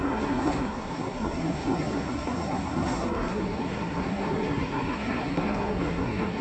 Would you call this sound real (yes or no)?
no